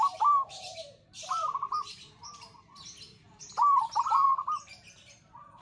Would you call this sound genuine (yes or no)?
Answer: no